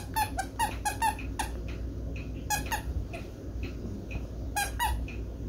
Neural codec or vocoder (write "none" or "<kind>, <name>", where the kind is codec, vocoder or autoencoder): none